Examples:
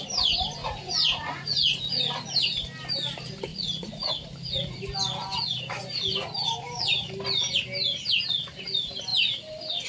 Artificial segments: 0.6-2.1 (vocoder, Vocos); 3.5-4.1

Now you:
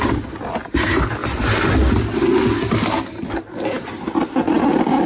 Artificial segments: none

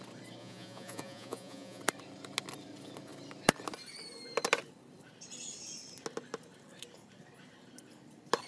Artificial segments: 0.4-1.8 (vocoder, Vocos)